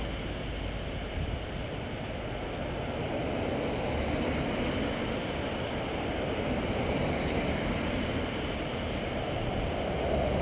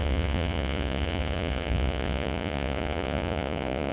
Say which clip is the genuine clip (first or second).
first